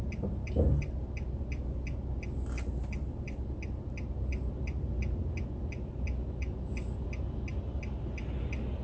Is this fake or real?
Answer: real